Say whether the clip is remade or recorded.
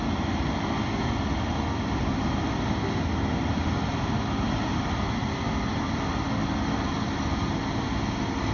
recorded